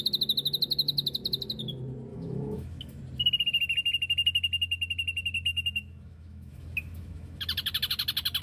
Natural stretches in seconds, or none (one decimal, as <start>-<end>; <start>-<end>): 0.0-2.1; 3.0-5.5; 7.4-8.4